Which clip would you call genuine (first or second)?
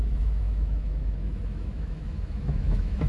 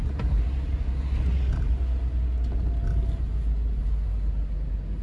second